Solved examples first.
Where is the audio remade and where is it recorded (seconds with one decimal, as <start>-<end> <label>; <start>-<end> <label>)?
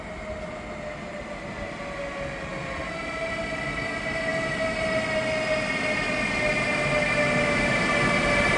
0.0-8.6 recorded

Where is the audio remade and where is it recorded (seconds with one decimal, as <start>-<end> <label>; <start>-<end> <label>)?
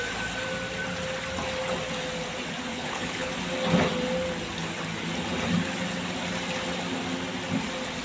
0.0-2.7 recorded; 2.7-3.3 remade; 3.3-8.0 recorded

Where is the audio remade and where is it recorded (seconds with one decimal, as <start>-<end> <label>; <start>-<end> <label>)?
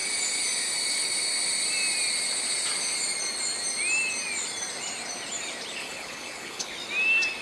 0.0-5.8 recorded; 5.8-6.7 remade; 6.7-7.4 recorded